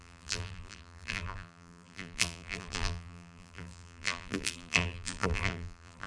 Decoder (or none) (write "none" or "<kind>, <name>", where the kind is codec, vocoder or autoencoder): vocoder, BigVGAN v2